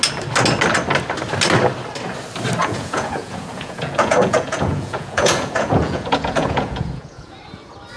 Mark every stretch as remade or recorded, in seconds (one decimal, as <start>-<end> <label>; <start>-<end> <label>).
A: 0.0-2.6 recorded; 2.6-7.4 remade; 7.4-8.0 recorded